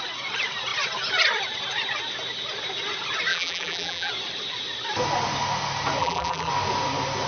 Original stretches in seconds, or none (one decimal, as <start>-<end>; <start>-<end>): 0.0-3.3; 4.1-6.0; 6.5-7.3